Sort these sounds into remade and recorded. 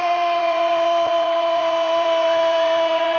remade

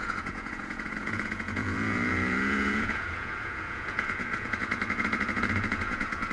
remade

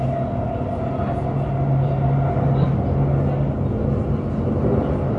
recorded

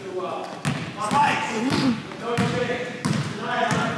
recorded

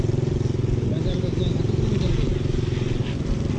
recorded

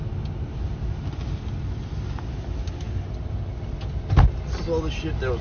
recorded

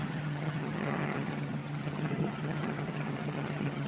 remade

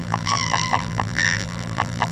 remade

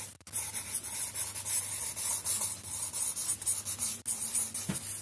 recorded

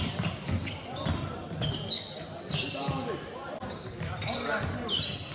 recorded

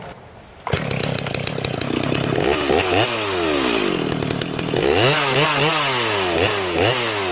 recorded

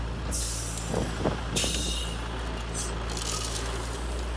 recorded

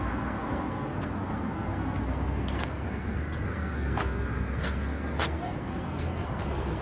remade